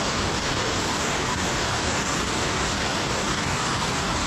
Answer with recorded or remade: remade